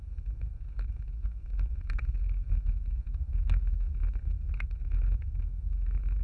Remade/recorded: remade